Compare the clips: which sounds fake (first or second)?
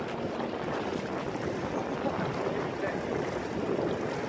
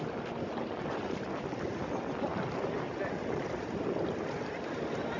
second